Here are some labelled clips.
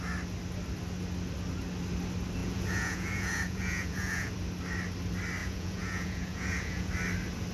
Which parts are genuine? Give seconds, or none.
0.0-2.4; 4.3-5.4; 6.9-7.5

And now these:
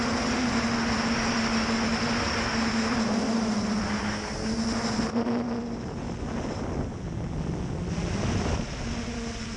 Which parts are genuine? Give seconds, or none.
0.0-9.6